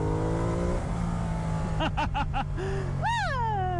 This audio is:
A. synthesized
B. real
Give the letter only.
B